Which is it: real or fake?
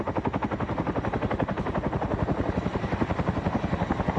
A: real